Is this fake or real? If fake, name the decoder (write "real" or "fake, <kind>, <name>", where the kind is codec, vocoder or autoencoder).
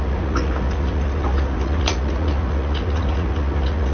fake, vocoder, Vocos